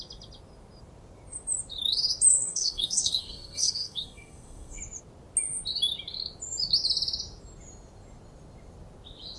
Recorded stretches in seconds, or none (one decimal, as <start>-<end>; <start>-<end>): 0.0-2.3; 4.8-9.4